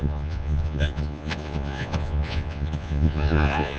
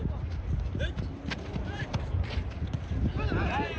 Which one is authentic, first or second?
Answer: second